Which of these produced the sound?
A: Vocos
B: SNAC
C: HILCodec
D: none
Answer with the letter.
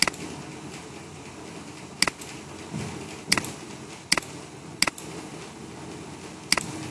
D